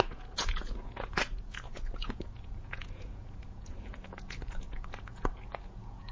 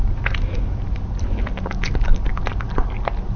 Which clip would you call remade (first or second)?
first